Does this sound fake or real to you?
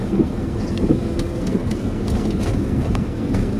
fake